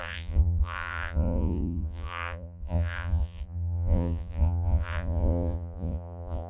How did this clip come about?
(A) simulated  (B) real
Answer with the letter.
A